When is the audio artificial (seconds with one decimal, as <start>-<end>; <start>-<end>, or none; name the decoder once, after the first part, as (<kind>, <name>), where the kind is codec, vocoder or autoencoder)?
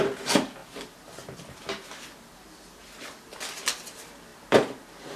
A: none